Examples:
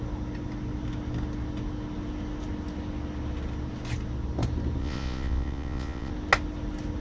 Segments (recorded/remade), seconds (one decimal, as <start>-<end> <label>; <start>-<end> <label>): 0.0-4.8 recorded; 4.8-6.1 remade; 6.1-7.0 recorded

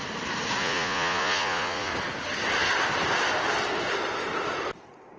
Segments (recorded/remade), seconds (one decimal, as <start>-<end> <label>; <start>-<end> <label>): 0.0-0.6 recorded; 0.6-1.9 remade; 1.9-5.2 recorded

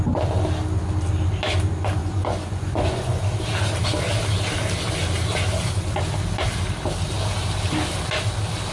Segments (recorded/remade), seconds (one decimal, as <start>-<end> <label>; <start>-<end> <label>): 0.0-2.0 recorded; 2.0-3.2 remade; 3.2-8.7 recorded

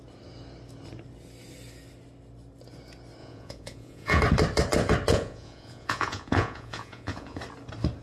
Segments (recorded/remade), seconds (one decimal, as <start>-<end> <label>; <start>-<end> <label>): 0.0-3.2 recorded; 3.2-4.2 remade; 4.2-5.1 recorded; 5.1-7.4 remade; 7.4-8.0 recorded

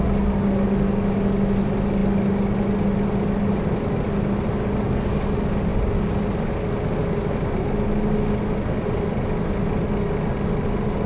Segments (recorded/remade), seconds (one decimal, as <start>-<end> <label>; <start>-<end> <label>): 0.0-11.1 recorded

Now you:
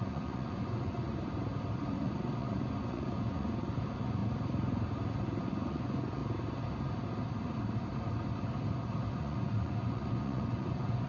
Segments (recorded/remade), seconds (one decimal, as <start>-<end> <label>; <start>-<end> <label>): 0.0-1.1 remade; 1.1-1.8 recorded; 1.8-4.2 remade; 4.2-5.4 recorded; 5.4-6.2 remade; 6.2-9.1 recorded; 9.1-11.1 remade

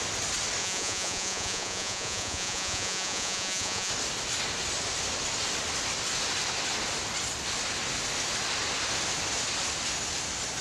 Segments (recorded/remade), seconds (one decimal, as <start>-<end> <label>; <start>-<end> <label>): 0.0-0.6 recorded; 0.6-3.9 remade; 3.9-10.6 recorded